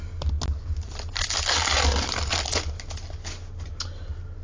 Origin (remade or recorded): recorded